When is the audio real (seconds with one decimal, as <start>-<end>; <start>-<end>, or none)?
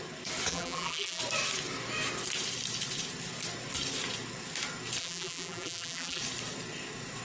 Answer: 0.0-0.5; 1.2-5.0; 6.2-7.2